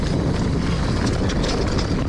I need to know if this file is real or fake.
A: real